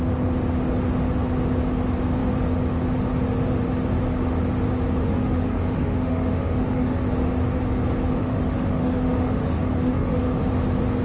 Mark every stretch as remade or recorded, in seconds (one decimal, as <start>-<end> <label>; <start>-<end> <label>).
0.0-5.0 recorded; 5.0-7.1 remade; 7.1-8.2 recorded; 8.2-10.5 remade; 10.5-11.0 recorded